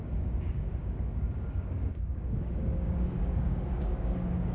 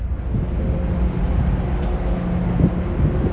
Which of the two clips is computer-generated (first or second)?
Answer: first